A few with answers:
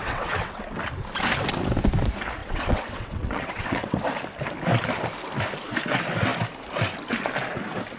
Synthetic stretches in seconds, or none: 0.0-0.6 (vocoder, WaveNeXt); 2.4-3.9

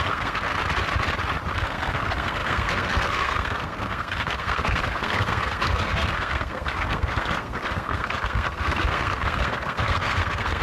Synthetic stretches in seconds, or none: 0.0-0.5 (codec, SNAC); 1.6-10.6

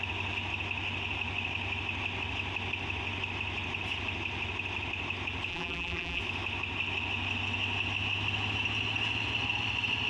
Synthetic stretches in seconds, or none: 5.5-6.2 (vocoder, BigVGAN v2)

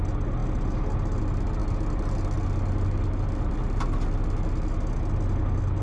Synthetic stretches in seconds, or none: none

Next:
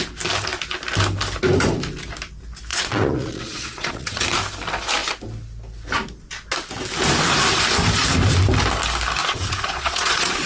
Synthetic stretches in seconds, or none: 2.7-4.2 (vocoder, Vocos); 9.2-10.5